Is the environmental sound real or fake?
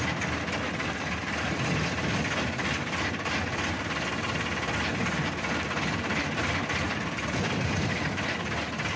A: real